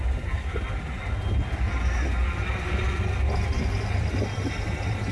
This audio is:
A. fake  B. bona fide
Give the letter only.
B